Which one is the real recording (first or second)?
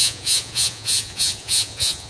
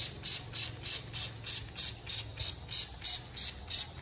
second